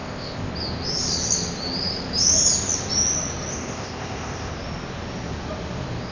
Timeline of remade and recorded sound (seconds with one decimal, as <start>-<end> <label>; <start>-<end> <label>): 0.0-0.5 remade; 0.5-3.5 recorded; 3.5-4.5 remade; 4.5-6.1 recorded